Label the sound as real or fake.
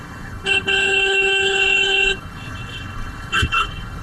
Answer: fake